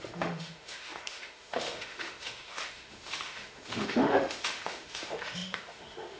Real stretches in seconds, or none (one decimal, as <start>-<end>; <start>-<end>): none